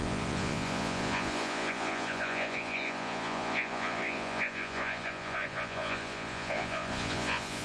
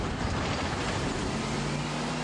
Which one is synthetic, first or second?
first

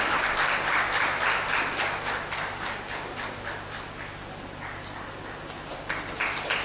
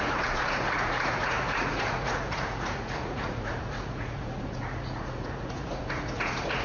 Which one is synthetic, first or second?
second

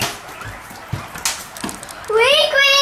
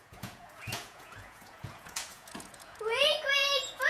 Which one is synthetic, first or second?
second